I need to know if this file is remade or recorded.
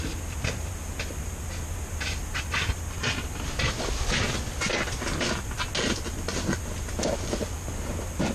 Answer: recorded